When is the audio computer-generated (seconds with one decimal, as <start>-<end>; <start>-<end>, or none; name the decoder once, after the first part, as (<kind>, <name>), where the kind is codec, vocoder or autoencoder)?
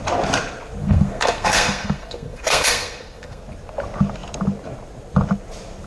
0.8-3.4 (codec, SNAC)